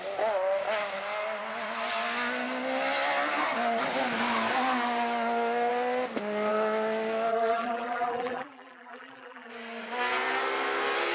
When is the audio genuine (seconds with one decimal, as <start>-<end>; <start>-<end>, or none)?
0.0-7.3; 9.5-11.1